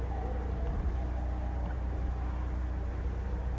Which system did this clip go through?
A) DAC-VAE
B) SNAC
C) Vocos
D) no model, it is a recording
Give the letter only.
D